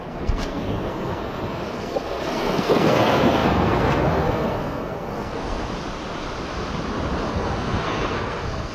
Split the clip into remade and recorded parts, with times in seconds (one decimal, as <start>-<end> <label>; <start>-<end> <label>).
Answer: 0.0-5.6 remade; 5.6-7.3 recorded; 7.3-8.7 remade